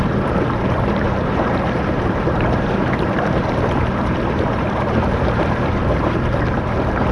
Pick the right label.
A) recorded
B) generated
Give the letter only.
B